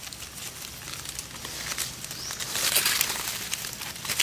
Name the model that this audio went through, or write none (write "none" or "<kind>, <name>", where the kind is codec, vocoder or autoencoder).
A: none